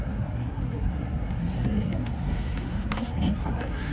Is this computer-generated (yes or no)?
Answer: yes